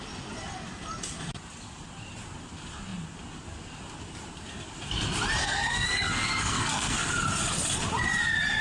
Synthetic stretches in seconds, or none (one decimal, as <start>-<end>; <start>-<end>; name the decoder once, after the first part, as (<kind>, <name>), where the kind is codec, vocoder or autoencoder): 5.4-7.1 (codec, SNAC)